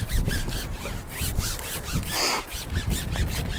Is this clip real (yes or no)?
yes